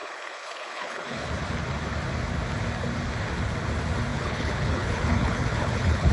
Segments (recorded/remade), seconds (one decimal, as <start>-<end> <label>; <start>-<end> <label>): 0.0-1.3 remade; 1.3-4.1 recorded; 4.1-6.1 remade